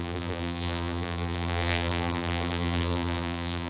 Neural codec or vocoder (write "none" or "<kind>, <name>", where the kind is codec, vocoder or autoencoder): vocoder, BigVGAN v2